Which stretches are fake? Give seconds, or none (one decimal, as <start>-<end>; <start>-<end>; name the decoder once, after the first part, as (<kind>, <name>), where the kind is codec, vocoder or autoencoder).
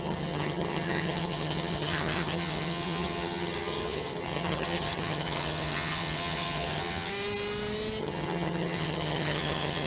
0.0-7.1 (vocoder, HiFi-GAN); 8.0-9.9